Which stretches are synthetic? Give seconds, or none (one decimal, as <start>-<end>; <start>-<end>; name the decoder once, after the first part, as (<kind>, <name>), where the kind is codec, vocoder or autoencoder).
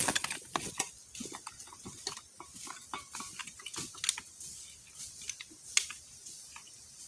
none